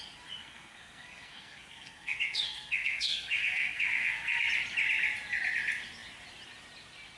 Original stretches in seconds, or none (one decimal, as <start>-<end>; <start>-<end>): 0.0-0.4; 4.4-7.2